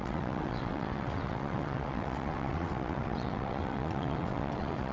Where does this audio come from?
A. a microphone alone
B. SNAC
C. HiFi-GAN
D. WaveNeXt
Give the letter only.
D